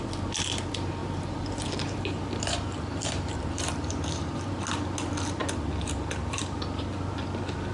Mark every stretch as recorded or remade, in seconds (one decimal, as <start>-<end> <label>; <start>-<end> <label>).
0.0-1.0 recorded; 1.0-4.5 remade; 4.5-7.7 recorded